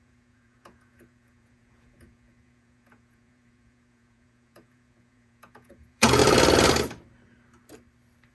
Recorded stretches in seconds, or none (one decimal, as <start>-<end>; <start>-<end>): 6.2-8.3